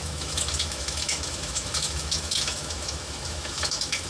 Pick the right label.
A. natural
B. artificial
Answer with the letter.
B